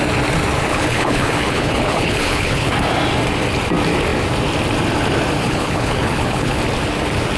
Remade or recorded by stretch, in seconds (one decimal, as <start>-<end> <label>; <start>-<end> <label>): 0.0-0.7 recorded; 0.7-2.7 remade; 2.7-5.4 recorded; 5.4-6.6 remade; 6.6-7.4 recorded